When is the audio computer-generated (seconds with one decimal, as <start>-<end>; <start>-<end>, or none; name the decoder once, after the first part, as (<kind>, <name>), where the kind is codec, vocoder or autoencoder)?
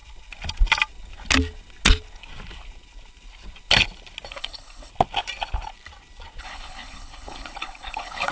4.3-4.9 (codec, HILCodec); 6.4-8.3